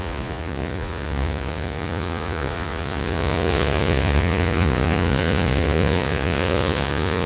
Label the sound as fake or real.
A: fake